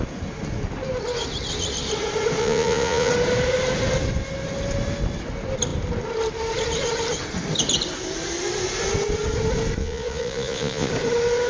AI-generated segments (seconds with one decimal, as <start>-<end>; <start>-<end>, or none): 2.4-3.1; 9.8-10.9